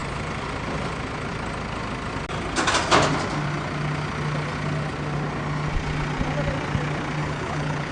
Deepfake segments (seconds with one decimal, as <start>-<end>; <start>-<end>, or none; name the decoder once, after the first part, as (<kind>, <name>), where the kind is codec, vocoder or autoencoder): 7.2-7.9 (codec, HILCodec)